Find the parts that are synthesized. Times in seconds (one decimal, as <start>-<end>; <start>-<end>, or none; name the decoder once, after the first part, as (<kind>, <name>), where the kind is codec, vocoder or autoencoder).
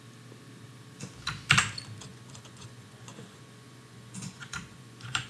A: 2.1-5.3 (vocoder, Vocos)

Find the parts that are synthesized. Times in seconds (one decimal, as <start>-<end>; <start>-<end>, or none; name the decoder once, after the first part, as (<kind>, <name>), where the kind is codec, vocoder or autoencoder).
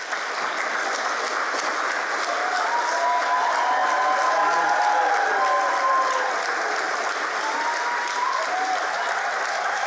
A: none